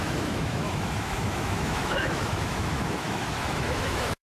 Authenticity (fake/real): fake